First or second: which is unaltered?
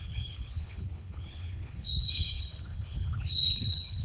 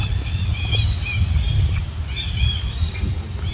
second